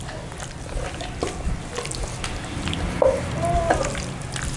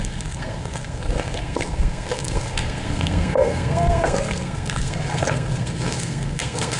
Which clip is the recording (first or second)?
first